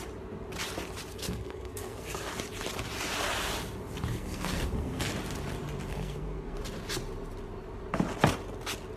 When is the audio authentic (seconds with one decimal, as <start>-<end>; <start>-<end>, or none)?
0.0-1.1; 2.3-4.1; 5.1-5.9; 6.6-9.0